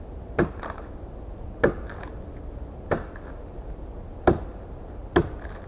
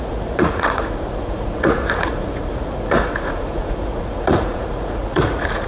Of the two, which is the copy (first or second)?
second